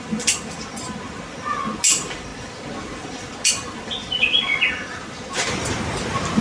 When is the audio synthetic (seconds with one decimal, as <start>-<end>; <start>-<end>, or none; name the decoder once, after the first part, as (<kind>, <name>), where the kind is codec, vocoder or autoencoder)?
none